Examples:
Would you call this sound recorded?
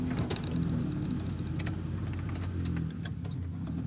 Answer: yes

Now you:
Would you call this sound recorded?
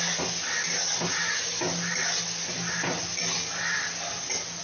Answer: yes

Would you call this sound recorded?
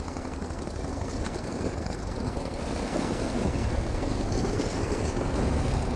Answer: no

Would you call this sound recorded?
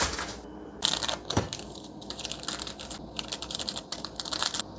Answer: yes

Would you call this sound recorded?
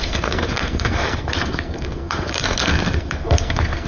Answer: no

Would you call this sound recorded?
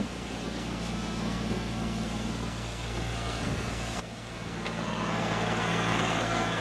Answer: no